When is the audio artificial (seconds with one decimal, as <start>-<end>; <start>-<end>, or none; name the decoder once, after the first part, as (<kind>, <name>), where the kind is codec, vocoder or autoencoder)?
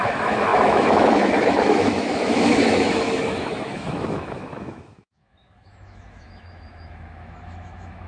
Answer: 0.0-8.1 (autoencoder, DAC-VAE)